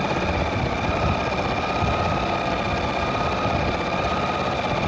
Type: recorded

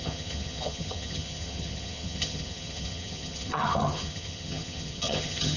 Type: remade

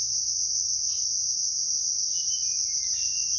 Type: recorded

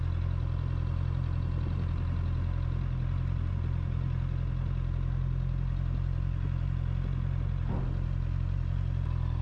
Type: recorded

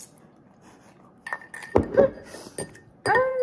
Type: recorded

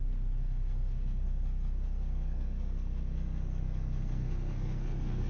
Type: remade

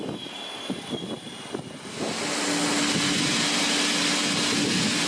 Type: recorded